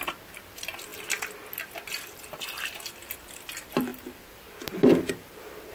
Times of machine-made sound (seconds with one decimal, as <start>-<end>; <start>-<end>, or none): 0.0-0.9; 3.2-5.7